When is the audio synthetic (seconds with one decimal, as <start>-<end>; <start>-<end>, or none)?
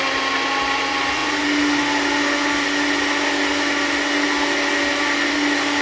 none